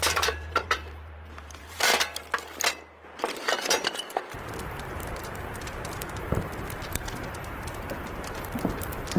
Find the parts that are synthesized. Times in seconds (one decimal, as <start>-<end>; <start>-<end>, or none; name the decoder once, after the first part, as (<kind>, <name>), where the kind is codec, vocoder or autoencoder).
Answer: 0.0-1.9 (vocoder, BigVGAN v2); 3.2-9.2